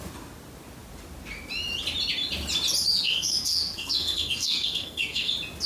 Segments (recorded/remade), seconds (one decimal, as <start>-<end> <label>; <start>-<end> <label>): 0.0-2.9 recorded; 2.9-5.3 remade; 5.3-5.7 recorded